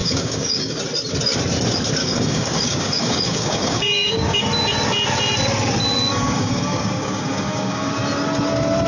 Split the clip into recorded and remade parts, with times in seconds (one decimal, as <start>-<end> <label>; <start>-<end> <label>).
0.0-0.8 remade; 0.8-2.0 recorded; 2.0-4.4 remade; 4.4-6.1 recorded; 6.1-7.9 remade; 7.9-8.9 recorded